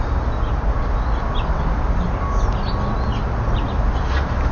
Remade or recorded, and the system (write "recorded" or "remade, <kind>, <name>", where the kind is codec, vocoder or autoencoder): recorded